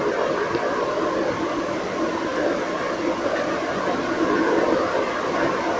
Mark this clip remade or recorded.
recorded